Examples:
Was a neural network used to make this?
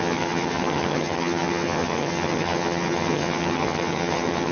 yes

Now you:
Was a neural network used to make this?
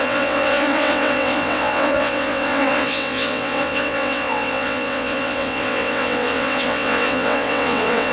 yes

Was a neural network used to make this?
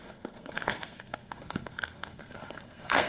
yes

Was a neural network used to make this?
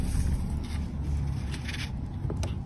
no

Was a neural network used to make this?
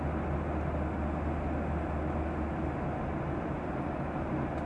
no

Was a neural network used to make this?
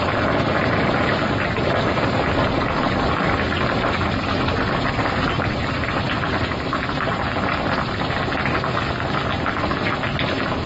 no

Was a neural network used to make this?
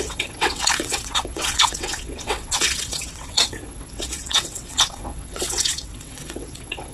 yes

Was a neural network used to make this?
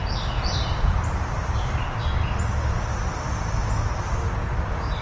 no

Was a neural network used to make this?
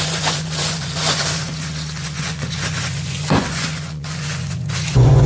yes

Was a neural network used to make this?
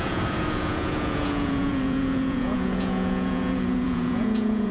yes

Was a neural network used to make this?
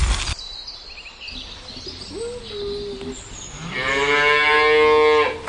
no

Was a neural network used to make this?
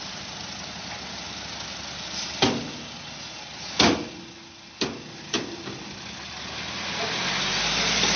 no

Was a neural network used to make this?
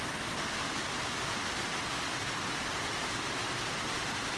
no